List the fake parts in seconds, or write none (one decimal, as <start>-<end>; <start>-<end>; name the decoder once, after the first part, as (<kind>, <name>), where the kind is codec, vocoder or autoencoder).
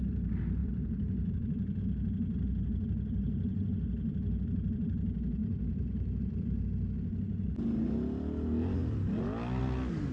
0.6-1.8 (vocoder, BigVGAN v2); 5.4-6.6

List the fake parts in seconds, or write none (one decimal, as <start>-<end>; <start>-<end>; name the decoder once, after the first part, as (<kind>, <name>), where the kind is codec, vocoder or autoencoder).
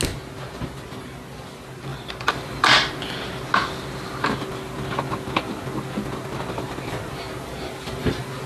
1.9-2.9 (vocoder, BigVGAN v2)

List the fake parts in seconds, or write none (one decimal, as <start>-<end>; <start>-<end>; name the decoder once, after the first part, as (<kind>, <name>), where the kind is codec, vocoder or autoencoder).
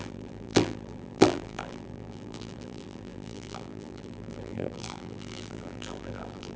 0.0-6.6 (vocoder, BigVGAN v2)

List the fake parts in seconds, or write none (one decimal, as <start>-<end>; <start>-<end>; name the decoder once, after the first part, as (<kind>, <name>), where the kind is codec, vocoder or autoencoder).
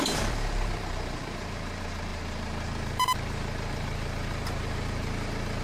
0.0-5.6 (vocoder, BigVGAN v2)